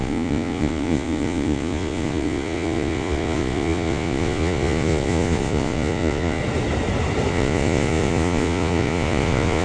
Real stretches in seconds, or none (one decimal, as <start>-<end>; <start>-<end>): 6.4-7.3